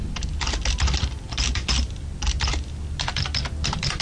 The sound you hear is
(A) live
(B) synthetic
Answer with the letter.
A